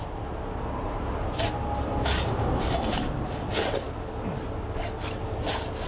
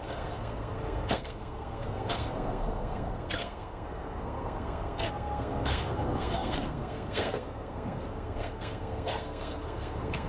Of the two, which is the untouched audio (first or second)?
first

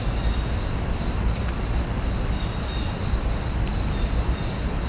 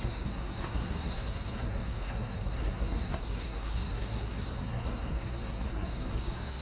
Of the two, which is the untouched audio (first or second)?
first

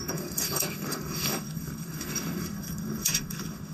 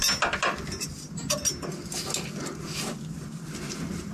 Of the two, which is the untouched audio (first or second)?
second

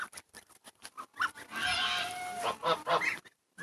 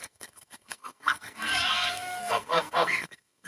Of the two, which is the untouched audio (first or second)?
first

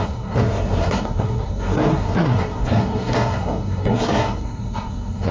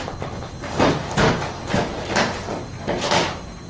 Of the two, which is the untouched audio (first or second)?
second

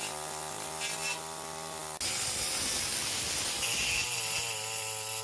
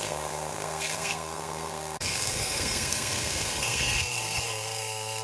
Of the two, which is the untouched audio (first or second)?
first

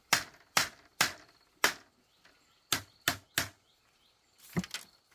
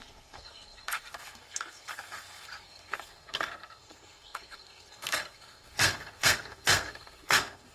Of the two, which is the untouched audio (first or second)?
first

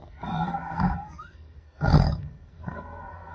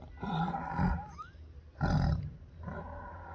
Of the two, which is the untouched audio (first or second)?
second